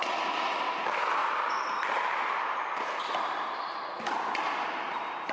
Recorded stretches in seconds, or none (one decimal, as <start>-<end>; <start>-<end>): 0.0-5.3